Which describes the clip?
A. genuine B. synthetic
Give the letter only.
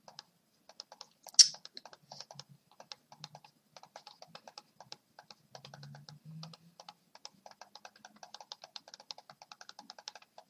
A